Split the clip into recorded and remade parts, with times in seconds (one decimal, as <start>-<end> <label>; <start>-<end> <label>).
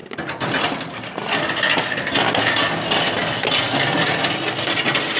0.0-5.2 recorded